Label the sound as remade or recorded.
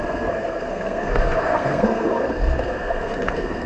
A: remade